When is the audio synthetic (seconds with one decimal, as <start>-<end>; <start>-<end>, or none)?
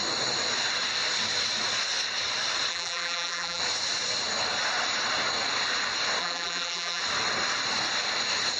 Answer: 2.7-3.6; 6.2-7.0